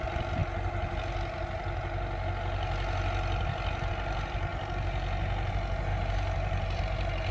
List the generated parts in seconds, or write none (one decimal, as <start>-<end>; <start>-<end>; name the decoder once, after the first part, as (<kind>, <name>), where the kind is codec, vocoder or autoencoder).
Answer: 5.9-6.8 (vocoder, BigVGAN v2)